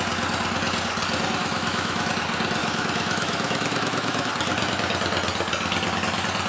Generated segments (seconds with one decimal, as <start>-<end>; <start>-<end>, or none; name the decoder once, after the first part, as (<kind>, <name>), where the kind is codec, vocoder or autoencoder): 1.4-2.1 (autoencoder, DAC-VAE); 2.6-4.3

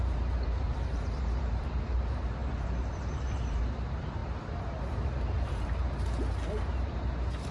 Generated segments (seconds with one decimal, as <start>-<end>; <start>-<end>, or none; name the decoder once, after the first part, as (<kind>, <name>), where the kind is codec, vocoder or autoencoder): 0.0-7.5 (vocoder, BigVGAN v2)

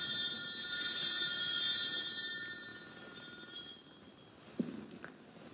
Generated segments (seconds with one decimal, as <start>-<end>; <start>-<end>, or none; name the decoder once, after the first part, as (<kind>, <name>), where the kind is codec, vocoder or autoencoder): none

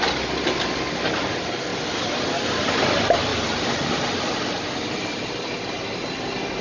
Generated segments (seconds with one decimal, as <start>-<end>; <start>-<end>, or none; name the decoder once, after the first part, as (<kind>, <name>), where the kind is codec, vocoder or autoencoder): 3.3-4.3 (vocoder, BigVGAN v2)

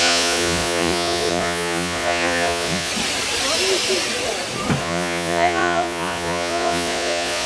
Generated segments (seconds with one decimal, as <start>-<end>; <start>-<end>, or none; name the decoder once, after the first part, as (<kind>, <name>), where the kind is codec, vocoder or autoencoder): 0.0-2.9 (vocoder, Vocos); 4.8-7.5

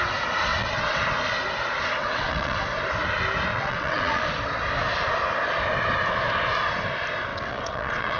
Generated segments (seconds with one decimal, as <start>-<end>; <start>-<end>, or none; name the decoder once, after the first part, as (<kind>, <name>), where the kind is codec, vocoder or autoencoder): 0.5-1.0 (vocoder, WaveNeXt); 2.0-2.6; 3.5-4.2; 7.3-8.2